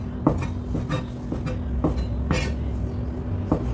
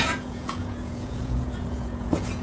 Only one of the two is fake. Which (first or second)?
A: second